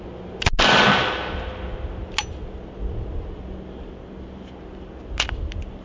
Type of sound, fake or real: real